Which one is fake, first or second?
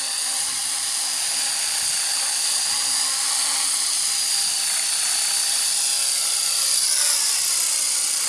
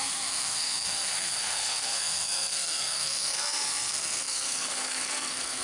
second